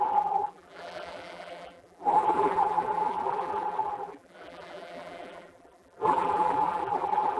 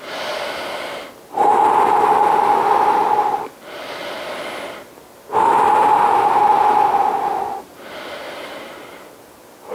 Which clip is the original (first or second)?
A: second